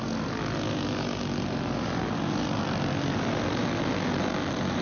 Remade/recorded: recorded